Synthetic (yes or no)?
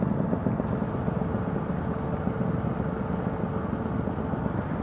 no